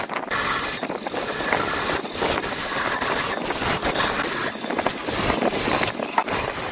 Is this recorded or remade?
recorded